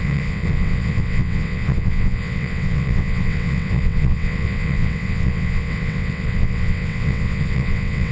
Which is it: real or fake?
fake